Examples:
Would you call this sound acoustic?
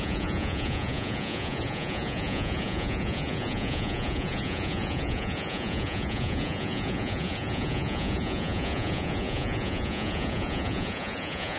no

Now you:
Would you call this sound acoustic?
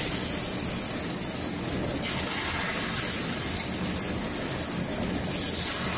yes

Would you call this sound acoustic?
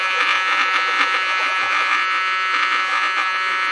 no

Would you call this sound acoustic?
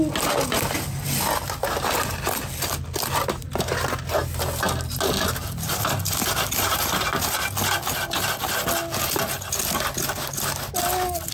yes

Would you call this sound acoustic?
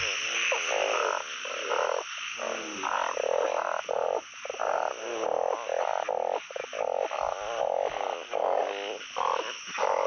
yes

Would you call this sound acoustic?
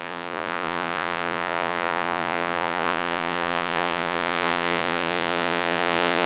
no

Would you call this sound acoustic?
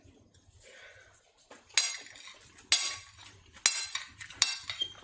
yes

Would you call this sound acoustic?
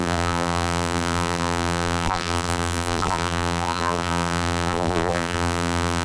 no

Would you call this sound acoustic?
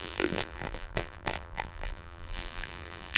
no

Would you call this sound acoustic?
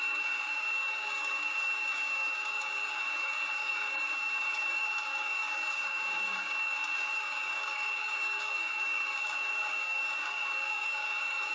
no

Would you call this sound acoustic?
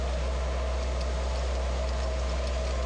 yes